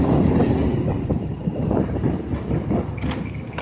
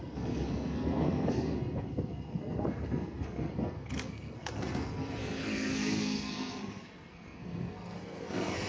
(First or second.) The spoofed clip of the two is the second